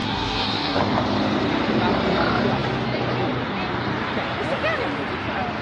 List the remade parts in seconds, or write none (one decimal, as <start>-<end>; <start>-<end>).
0.0-0.8